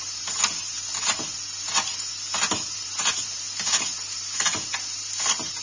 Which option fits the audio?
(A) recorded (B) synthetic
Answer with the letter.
A